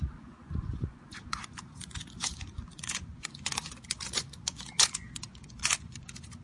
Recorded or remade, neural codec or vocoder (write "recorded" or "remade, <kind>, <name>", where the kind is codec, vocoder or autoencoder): remade, vocoder, Vocos